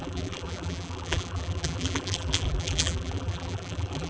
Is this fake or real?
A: fake